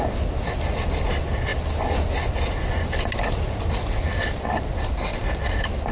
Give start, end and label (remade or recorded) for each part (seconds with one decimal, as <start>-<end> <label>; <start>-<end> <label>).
0.0-5.9 recorded